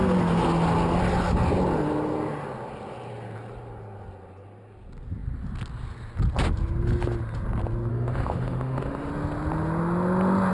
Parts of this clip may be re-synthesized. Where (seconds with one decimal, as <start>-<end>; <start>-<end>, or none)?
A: 7.9-9.1